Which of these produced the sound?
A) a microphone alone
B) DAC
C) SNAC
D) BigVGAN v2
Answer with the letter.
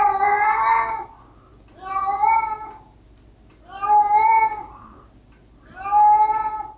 A